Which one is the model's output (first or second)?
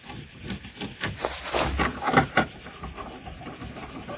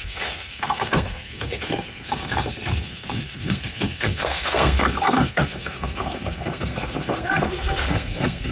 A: second